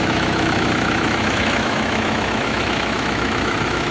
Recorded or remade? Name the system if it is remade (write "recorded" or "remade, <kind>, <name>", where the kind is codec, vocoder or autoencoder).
remade, autoencoder, DAC-VAE